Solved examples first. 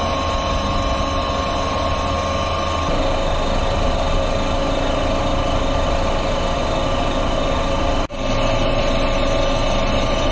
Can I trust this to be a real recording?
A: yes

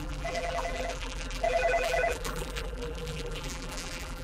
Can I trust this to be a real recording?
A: no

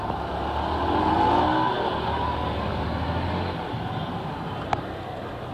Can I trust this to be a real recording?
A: yes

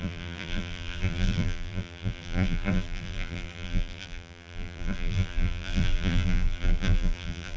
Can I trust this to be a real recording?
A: no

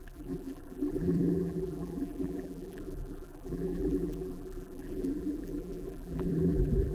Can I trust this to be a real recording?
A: no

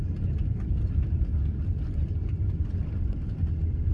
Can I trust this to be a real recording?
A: no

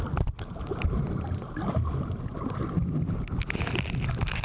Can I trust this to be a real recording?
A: no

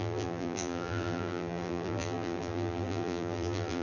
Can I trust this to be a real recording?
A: no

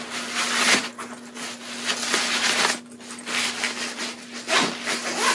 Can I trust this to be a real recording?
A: yes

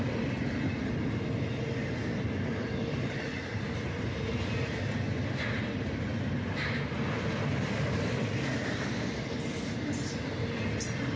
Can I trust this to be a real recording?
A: yes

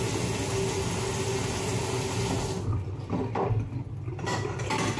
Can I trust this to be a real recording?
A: yes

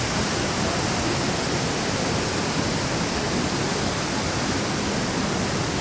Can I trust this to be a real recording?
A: yes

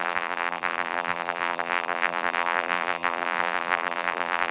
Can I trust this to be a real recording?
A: no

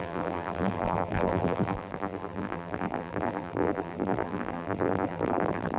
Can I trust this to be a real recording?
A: no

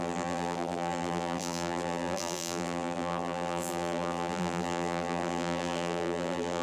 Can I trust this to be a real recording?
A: no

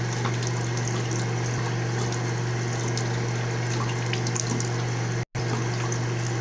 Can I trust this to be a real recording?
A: yes